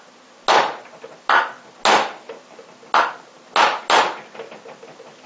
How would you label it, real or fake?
real